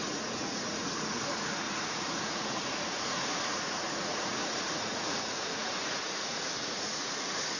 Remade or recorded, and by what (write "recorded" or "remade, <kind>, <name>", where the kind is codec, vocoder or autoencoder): remade, vocoder, Vocos